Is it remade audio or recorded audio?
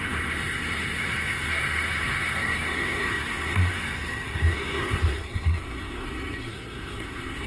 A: remade